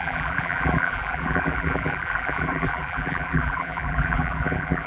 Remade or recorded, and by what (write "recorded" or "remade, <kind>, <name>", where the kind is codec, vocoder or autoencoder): remade, vocoder, BigVGAN v2